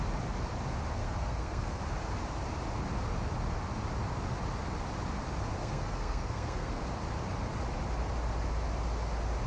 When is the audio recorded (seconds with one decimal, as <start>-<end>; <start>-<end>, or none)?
0.0-1.0; 1.8-5.6; 6.8-9.5